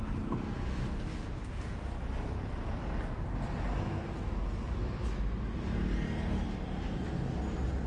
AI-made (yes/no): no